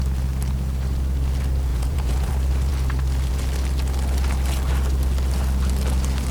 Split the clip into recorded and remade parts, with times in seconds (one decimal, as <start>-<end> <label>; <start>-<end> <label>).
0.0-1.7 recorded; 1.7-2.3 remade; 2.3-6.3 recorded